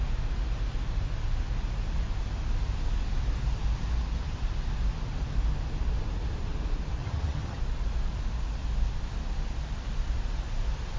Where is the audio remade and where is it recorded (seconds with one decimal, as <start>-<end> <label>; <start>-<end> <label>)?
0.0-7.0 recorded; 7.0-7.6 remade; 7.6-11.0 recorded